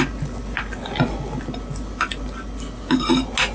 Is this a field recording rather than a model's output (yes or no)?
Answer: yes